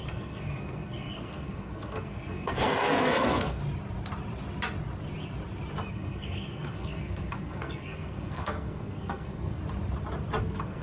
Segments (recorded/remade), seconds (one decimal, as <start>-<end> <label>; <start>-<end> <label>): 0.0-3.6 remade; 3.6-5.9 recorded; 5.9-9.6 remade; 9.6-10.4 recorded; 10.4-10.8 remade